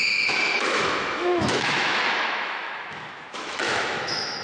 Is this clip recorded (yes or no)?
no